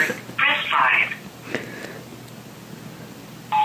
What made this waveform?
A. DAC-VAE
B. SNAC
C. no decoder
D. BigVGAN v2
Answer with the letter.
D